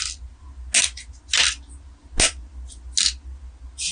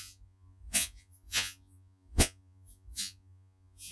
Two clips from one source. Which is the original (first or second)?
first